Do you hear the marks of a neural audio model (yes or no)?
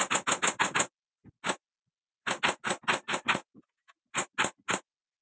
no